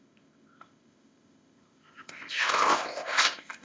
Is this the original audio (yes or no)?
no